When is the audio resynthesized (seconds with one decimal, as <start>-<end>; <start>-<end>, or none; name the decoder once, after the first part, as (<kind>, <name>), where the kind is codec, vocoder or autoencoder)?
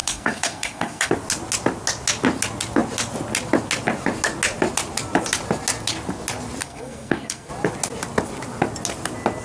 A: 0.0-1.1 (codec, SNAC); 6.6-7.5